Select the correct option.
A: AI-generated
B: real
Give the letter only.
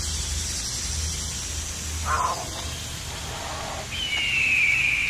B